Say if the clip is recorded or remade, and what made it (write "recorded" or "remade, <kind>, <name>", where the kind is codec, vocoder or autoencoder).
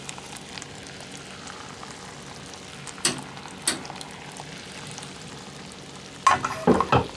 recorded